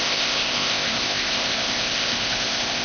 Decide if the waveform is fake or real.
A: fake